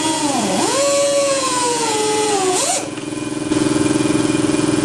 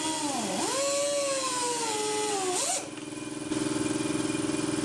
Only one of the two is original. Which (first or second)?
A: second